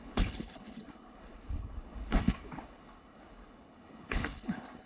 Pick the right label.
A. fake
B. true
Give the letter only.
A